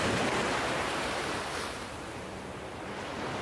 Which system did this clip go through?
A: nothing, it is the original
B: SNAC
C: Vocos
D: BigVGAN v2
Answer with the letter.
D